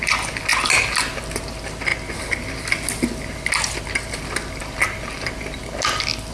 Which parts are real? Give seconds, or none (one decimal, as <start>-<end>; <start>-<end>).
0.0-6.3